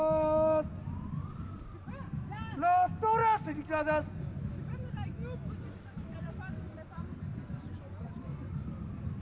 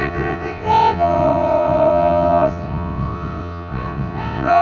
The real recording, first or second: first